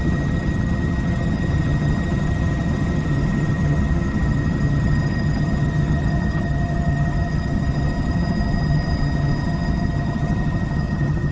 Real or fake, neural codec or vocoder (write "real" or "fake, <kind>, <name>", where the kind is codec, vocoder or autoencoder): fake, vocoder, HiFi-GAN